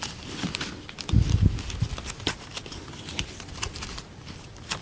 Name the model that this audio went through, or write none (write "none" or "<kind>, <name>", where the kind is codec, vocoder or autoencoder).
none